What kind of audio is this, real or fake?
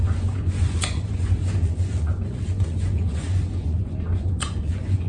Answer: fake